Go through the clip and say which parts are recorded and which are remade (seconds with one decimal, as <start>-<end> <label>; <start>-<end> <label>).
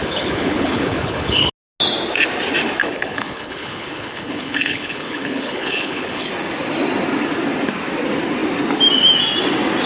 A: 0.0-1.5 remade; 1.5-2.8 recorded; 2.8-6.3 remade; 6.3-9.8 recorded